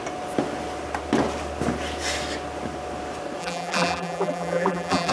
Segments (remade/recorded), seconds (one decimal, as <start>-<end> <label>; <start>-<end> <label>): 0.0-3.4 recorded; 3.4-5.1 remade